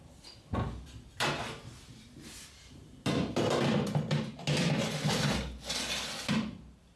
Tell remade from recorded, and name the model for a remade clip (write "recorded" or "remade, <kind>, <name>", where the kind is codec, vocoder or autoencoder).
recorded